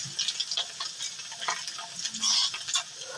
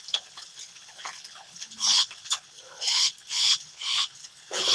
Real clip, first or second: first